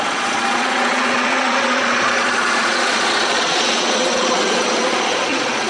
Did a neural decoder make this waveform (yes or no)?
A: yes